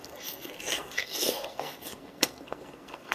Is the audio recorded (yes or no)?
no